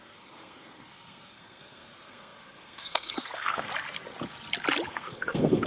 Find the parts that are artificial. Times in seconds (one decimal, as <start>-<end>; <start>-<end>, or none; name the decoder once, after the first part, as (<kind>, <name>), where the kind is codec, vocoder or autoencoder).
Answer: 0.0-3.7 (codec, SNAC); 4.9-5.7